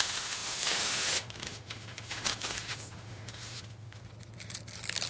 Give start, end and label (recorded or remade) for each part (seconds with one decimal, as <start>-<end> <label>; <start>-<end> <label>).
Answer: 0.0-4.0 remade; 4.0-5.1 recorded